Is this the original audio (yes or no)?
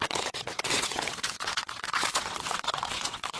no